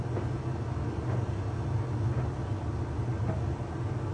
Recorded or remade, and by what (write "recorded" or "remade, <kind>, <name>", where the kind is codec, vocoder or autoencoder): recorded